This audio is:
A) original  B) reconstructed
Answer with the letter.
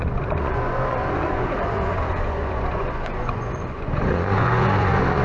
B